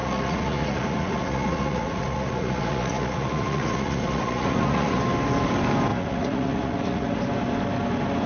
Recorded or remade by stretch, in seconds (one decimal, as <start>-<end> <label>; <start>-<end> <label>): 0.0-5.0 remade; 5.0-5.9 recorded; 5.9-7.2 remade; 7.2-8.3 recorded